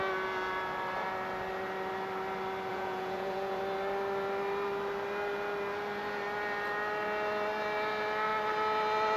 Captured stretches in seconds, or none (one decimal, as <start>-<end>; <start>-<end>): 0.0-2.7; 3.6-9.2